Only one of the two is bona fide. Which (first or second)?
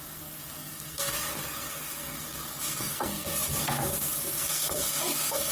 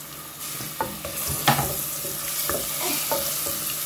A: second